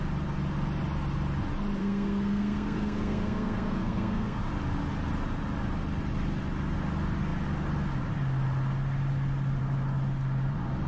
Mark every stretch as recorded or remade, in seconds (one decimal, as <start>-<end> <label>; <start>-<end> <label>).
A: 0.0-1.8 recorded; 1.8-4.4 remade; 4.4-10.9 recorded